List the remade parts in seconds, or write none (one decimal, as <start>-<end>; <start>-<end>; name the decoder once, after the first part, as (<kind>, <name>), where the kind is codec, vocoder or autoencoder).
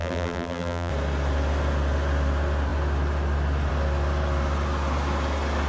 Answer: 0.0-0.9 (vocoder, BigVGAN v2)